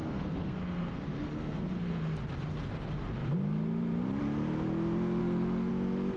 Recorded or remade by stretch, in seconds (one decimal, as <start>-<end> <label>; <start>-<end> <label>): 0.0-2.0 remade; 2.0-5.2 recorded; 5.2-5.7 remade; 5.7-6.2 recorded